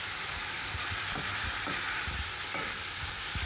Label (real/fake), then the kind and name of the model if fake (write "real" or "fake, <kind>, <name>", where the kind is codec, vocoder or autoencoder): fake, vocoder, BigVGAN v2